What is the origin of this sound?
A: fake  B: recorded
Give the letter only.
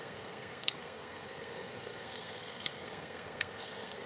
A